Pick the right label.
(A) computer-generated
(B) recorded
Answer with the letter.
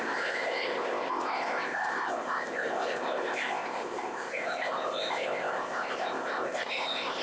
A